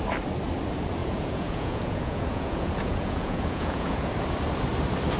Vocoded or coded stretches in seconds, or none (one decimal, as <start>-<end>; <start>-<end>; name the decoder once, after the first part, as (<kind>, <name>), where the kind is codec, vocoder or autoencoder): 1.0-4.1 (vocoder, Vocos)